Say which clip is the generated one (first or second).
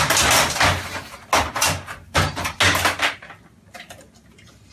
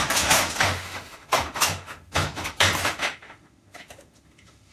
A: second